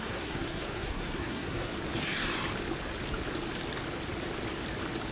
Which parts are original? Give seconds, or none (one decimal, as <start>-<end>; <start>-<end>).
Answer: 1.7-5.1

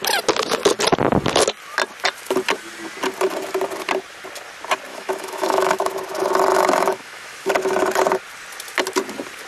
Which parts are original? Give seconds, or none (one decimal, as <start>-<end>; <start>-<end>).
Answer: 0.0-4.9; 5.9-6.5; 7.5-9.5

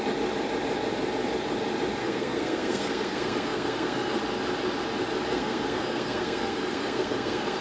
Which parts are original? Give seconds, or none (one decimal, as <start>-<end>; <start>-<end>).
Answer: 0.0-2.0; 4.2-5.3

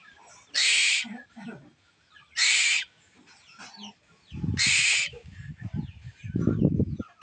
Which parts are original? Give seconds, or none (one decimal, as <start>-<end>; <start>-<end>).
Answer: 0.0-7.2

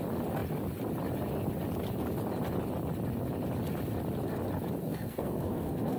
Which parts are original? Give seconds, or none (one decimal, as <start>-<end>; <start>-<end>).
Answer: 0.0-4.8

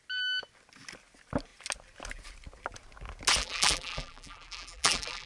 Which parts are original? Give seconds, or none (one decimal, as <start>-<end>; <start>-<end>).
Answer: 0.0-3.4

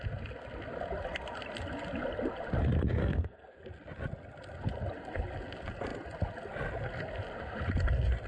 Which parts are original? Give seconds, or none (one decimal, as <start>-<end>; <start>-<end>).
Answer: 0.0-3.0; 3.6-8.3